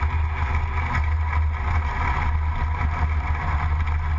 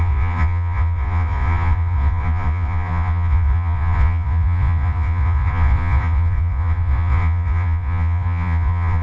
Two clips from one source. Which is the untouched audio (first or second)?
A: first